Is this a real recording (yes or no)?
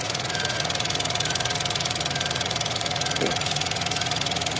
no